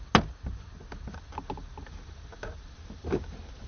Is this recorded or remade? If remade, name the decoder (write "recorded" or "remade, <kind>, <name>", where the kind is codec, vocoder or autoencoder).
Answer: recorded